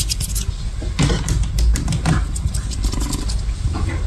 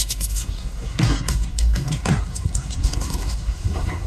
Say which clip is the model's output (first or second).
second